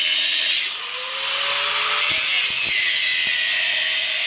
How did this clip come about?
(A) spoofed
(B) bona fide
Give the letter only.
A